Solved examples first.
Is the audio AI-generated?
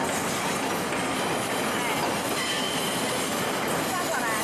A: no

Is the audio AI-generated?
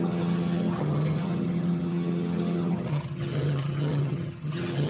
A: yes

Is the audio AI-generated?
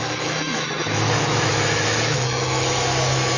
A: yes